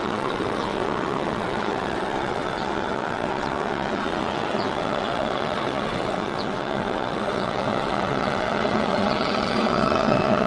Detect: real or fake fake